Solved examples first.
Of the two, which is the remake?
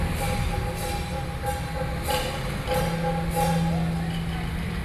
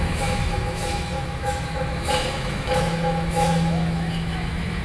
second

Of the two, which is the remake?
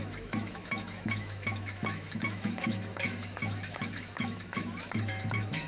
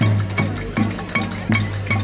first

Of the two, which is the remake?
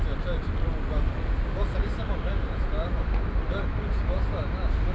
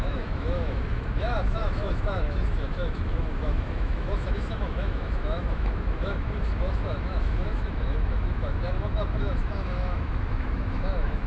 second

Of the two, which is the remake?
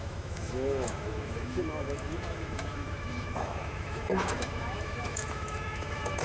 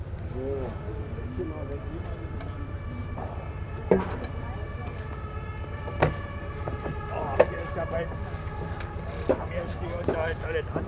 first